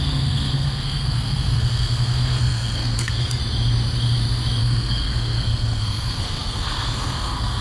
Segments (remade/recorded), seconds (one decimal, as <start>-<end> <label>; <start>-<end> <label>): 0.0-3.4 remade; 3.4-4.6 recorded; 4.6-7.6 remade